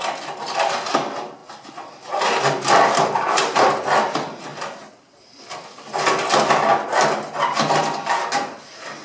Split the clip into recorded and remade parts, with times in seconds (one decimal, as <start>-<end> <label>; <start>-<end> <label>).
0.0-9.0 recorded